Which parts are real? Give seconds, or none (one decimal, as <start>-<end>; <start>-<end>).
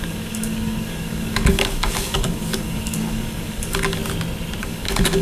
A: 4.0-4.6